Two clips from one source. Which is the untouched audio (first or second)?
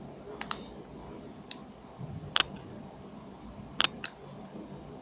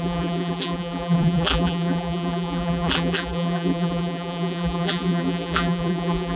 first